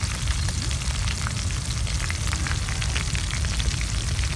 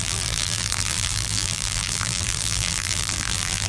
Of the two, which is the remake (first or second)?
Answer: second